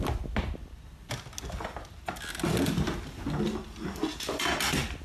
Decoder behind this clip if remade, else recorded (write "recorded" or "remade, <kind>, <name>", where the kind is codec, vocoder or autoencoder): recorded